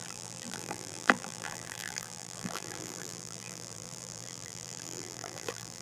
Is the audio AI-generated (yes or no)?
yes